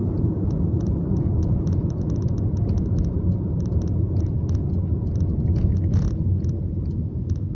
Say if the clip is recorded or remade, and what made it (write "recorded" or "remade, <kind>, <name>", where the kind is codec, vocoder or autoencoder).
remade, vocoder, Vocos